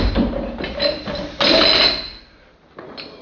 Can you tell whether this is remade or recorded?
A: recorded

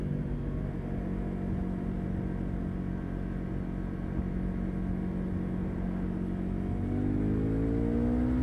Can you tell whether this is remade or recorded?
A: recorded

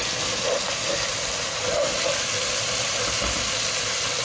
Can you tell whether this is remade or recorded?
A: recorded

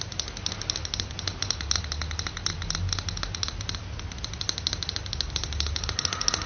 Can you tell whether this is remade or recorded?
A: recorded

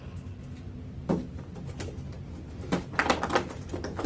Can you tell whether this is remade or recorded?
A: recorded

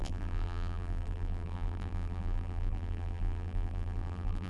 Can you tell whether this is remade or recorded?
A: remade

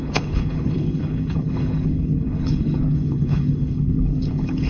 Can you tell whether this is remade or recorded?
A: remade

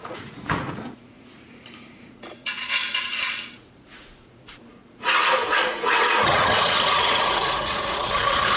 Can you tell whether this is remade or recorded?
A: remade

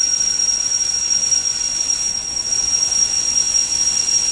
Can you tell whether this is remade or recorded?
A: remade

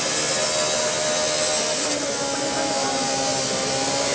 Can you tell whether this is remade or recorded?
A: recorded